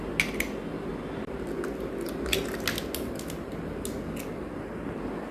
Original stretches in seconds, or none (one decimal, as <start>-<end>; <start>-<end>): 0.0-5.3